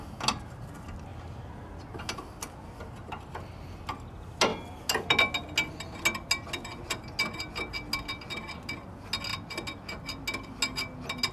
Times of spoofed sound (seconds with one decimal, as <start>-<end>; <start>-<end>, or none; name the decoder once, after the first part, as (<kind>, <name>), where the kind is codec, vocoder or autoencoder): none